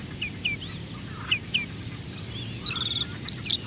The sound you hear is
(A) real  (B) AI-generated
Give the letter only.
A